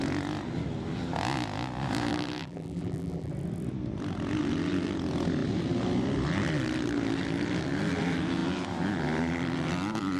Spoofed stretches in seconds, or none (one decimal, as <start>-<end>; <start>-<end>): 2.1-3.3

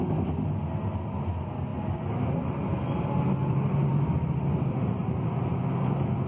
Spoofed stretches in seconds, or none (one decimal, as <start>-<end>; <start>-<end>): 3.4-3.9

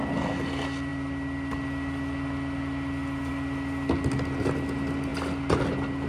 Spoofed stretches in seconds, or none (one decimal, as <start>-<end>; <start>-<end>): none

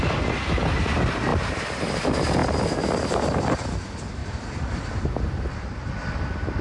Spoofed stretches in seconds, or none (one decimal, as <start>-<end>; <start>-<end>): none

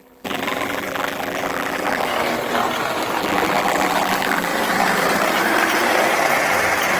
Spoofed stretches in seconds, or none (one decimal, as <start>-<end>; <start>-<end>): 0.0-2.1; 3.2-4.5

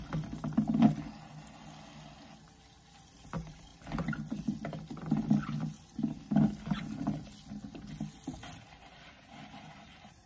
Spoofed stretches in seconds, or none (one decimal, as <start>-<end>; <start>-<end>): 3.2-3.7; 8.8-10.3

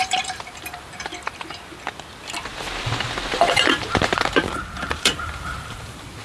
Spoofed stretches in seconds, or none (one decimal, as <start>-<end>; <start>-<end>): 0.0-1.1; 3.3-6.2